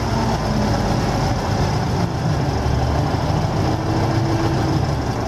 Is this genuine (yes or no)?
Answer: yes